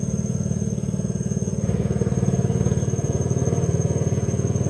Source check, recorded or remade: recorded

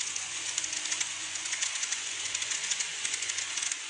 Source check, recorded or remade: remade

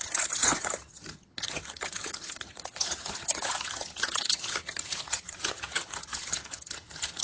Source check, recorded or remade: remade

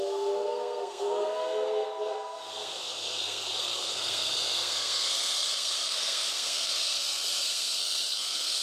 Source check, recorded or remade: remade